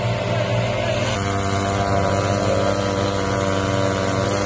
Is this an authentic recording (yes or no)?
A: yes